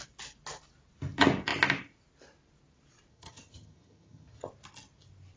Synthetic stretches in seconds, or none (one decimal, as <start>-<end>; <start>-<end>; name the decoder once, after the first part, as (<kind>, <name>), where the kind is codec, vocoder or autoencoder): 3.1-4.5 (vocoder, HiFi-GAN)